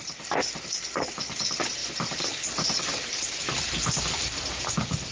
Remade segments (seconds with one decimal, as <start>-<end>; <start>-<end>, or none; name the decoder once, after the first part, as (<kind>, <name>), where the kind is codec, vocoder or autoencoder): none